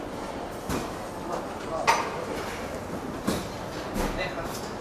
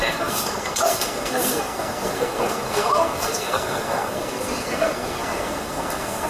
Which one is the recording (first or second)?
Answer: first